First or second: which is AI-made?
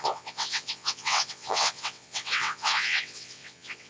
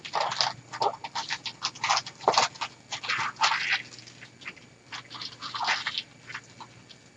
first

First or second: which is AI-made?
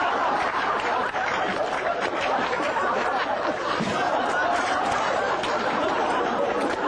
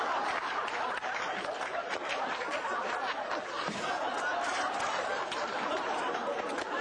first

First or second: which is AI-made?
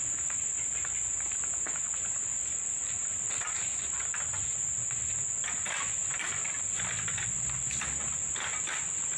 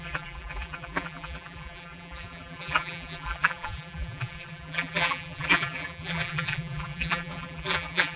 second